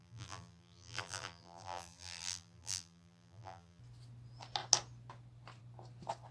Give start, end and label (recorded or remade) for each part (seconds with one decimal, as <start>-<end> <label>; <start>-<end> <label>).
0.0-3.8 remade; 3.8-6.3 recorded